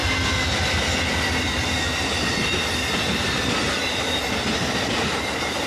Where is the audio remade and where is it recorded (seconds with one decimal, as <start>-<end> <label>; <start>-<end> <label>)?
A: 0.0-5.7 recorded